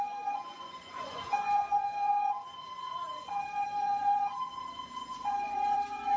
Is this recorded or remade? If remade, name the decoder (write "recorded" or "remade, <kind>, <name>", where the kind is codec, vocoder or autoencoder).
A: remade, vocoder, Vocos